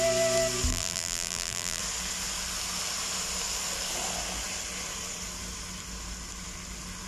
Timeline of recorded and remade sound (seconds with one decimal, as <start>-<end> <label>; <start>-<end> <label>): 0.0-0.7 recorded; 0.7-1.8 remade; 1.8-7.1 recorded